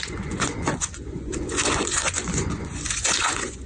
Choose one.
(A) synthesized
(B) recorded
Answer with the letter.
A